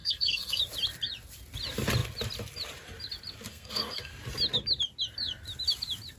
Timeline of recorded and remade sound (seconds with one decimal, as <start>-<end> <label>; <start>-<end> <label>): 0.0-0.6 remade; 0.6-3.5 recorded; 3.5-4.1 remade; 4.1-6.2 recorded